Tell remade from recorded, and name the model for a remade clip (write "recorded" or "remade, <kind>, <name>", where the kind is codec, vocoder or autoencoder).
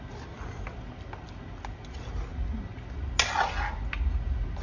recorded